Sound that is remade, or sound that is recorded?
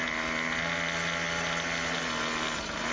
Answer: recorded